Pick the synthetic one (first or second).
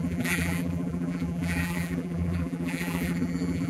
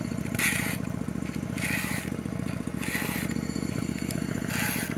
first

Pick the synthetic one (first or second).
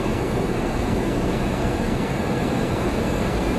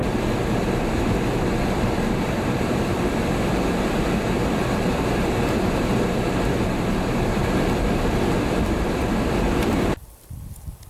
first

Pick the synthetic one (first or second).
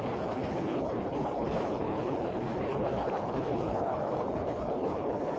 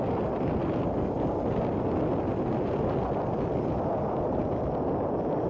first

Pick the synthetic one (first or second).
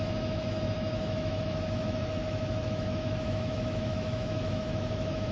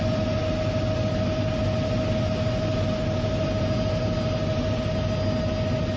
first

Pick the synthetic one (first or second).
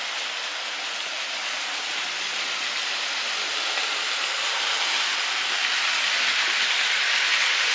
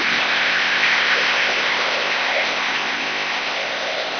second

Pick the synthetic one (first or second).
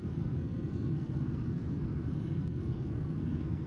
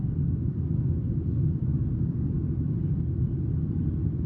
first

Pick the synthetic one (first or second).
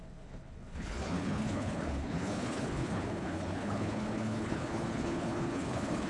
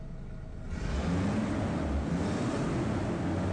first